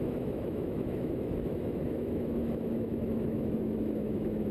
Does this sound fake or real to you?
fake